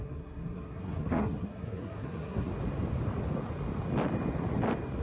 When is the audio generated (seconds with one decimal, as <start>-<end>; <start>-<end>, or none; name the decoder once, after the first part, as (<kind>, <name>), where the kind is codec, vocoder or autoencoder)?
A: 0.0-2.5 (codec, SNAC)